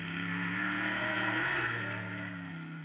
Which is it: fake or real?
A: fake